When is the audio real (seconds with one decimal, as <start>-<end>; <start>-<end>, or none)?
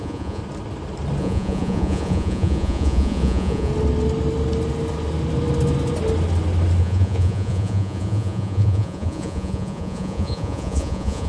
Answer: 0.4-1.2; 3.7-6.8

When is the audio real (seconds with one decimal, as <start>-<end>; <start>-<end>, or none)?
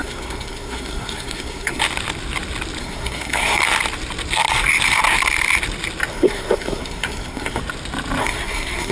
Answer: 1.8-2.8; 3.6-6.1; 7.6-8.2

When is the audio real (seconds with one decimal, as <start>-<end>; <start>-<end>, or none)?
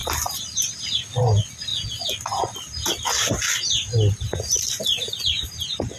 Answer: 0.0-6.0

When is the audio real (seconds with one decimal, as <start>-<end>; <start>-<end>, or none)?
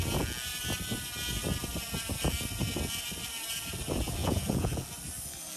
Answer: 0.0-4.2; 4.8-5.6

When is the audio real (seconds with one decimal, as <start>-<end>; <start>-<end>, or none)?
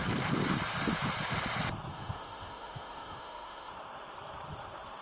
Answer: 0.0-1.9; 3.7-5.0